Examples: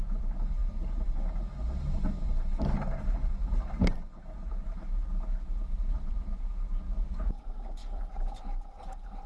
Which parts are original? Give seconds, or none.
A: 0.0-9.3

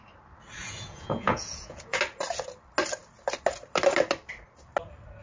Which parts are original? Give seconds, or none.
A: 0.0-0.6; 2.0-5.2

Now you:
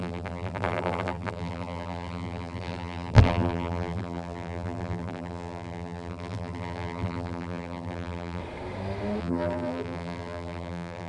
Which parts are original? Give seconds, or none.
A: 8.4-9.2

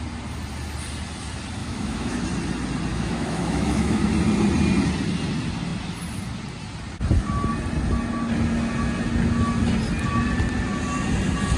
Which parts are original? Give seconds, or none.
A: 0.0-1.6; 2.2-2.9; 4.1-11.6